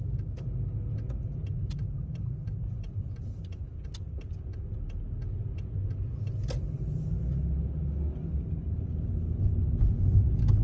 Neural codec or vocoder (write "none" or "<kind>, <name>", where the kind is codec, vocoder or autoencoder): none